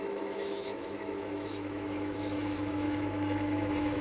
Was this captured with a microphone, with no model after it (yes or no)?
no